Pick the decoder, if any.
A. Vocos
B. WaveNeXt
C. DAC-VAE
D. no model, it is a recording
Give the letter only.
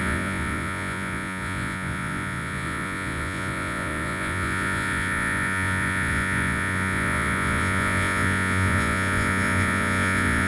A